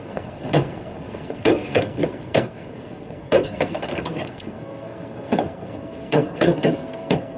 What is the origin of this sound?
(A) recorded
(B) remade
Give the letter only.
B